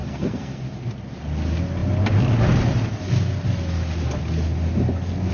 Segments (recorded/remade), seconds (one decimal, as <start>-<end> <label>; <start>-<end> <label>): 0.0-0.6 remade; 0.6-5.3 recorded